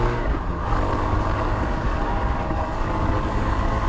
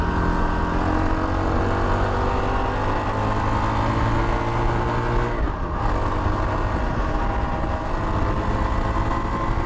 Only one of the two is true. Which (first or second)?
second